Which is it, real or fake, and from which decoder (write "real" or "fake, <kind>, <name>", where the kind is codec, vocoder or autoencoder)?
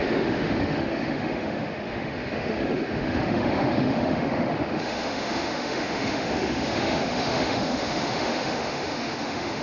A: fake, autoencoder, DAC-VAE